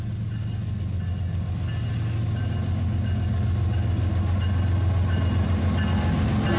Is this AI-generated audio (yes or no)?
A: no